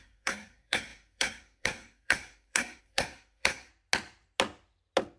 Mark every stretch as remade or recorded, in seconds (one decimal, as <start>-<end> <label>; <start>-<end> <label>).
0.0-3.7 remade; 3.7-5.2 recorded